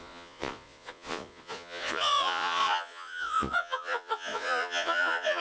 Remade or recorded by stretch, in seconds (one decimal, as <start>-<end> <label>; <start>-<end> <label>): 0.0-5.4 remade